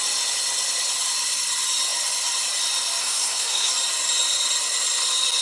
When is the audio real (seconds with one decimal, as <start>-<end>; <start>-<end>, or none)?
0.0-3.0; 3.7-5.4